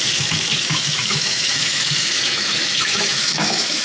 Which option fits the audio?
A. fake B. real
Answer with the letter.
A